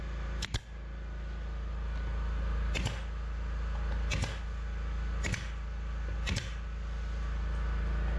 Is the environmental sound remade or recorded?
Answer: recorded